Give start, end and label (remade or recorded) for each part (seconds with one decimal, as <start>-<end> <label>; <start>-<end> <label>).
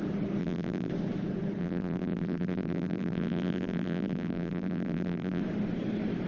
0.0-0.4 recorded; 0.4-0.9 remade; 0.9-1.6 recorded; 1.6-5.4 remade; 5.4-6.3 recorded